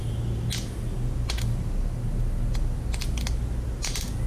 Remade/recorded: recorded